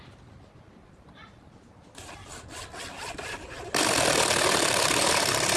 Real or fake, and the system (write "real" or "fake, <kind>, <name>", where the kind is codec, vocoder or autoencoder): real